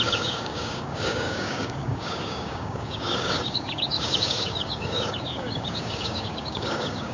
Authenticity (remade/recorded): remade